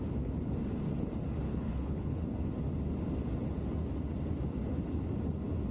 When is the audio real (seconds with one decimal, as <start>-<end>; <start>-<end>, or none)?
0.0-1.5; 2.5-5.7